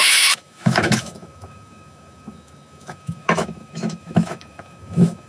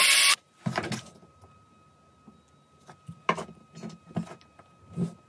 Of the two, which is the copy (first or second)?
first